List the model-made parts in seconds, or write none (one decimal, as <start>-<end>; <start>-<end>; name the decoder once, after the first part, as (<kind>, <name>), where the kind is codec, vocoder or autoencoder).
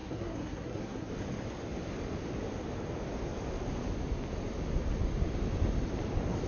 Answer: 0.0-1.1 (codec, SNAC)